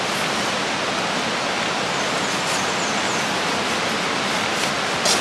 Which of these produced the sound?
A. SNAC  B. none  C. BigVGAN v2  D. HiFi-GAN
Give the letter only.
B